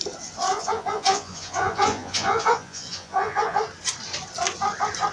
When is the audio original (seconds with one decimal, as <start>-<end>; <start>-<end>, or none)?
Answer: 0.0-0.5; 3.6-5.1